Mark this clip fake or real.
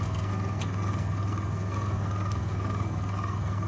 fake